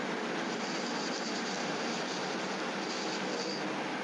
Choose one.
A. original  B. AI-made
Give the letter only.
A